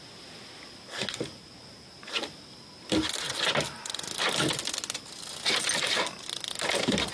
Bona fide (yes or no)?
yes